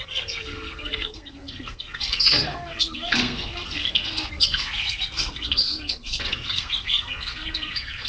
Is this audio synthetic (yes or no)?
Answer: yes